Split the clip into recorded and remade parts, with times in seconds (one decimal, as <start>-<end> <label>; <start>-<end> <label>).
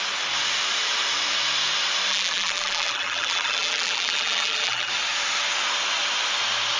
0.0-2.1 recorded; 2.1-4.9 remade; 4.9-6.8 recorded